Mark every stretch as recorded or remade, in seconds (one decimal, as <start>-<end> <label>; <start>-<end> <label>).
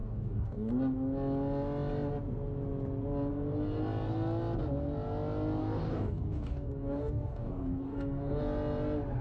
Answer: 0.0-0.7 remade; 0.7-5.6 recorded; 5.6-8.4 remade; 8.4-9.2 recorded